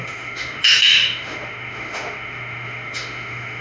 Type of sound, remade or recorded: remade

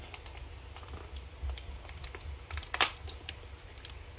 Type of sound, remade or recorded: recorded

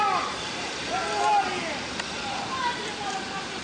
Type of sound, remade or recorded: recorded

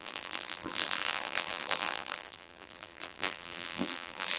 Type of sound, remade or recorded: remade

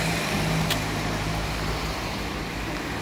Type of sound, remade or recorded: remade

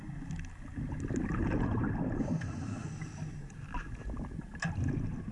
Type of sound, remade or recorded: recorded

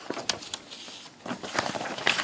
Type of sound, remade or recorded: recorded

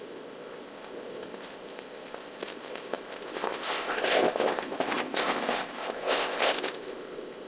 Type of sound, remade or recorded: remade